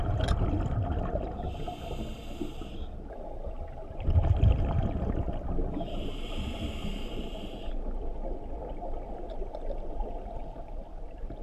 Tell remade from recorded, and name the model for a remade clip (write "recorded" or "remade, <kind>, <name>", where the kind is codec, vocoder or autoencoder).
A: recorded